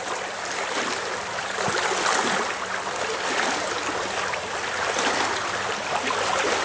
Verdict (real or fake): real